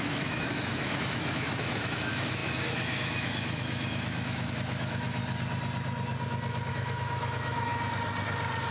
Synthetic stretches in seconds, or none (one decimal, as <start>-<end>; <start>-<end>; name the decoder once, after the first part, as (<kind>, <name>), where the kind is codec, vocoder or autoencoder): 0.0-5.2 (autoencoder, DAC-VAE); 6.7-7.7